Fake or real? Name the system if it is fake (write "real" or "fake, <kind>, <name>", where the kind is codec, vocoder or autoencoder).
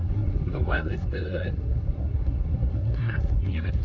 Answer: fake, codec, SNAC